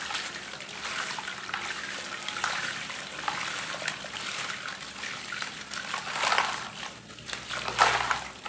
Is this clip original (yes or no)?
yes